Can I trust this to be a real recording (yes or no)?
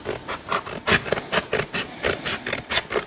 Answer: yes